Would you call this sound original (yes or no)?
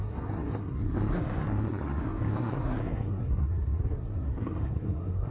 no